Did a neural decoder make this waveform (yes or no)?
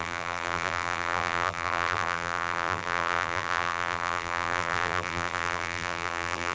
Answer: yes